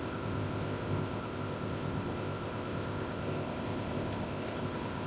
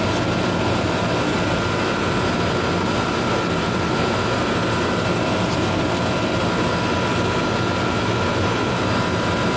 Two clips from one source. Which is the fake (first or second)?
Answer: first